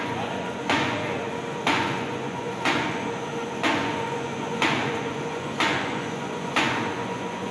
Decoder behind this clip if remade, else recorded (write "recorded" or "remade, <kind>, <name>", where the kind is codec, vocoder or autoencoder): remade, vocoder, Vocos